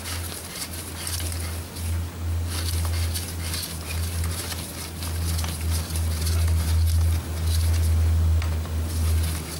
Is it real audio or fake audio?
real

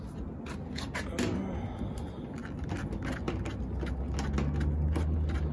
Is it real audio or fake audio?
real